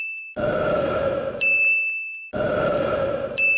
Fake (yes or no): yes